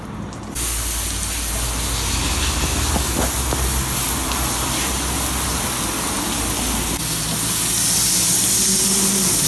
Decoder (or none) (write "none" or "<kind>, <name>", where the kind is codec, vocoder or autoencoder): none